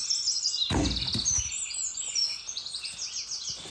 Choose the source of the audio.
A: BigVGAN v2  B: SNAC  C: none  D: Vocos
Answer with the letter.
C